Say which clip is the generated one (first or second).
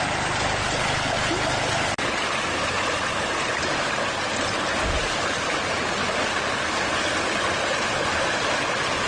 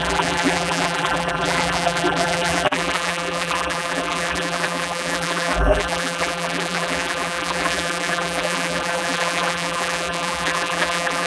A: second